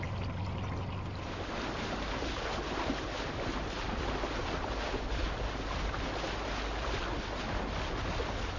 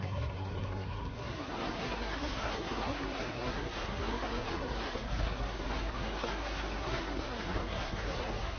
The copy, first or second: second